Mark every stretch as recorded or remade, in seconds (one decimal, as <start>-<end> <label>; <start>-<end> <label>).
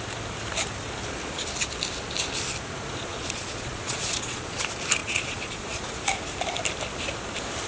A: 0.0-3.1 recorded; 3.1-4.6 remade; 4.6-5.0 recorded; 5.0-5.8 remade; 5.8-7.7 recorded